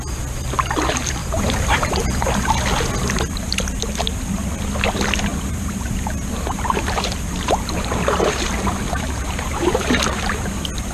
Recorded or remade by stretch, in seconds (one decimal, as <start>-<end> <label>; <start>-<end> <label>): 0.0-1.2 recorded; 1.2-2.3 remade; 2.3-5.3 recorded; 5.3-10.5 remade; 10.5-10.9 recorded